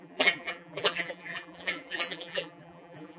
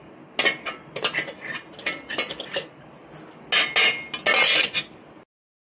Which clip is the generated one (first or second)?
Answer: first